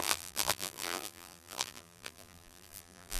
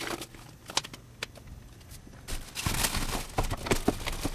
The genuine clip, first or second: second